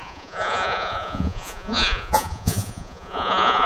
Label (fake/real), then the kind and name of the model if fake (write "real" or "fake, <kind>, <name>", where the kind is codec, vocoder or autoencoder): fake, vocoder, Vocos